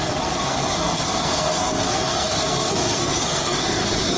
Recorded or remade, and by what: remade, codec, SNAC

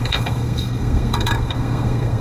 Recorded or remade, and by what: remade, codec, SNAC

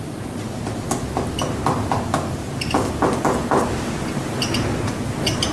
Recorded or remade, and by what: recorded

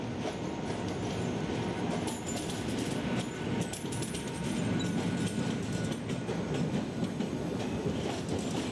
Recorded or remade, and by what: recorded